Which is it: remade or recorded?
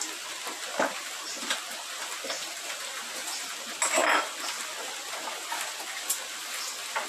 recorded